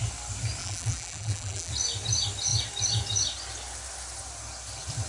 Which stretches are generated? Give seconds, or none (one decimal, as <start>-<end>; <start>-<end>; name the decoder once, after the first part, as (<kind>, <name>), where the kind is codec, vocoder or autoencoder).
0.6-1.7 (vocoder, BigVGAN v2)